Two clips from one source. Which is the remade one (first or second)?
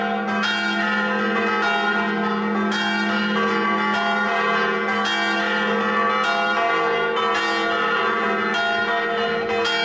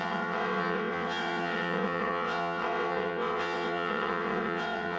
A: second